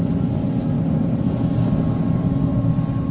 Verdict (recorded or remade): recorded